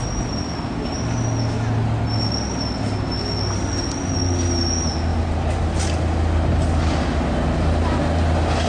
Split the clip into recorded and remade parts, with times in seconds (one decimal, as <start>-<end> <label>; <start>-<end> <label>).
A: 0.0-8.7 recorded